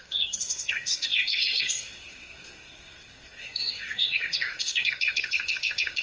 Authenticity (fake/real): fake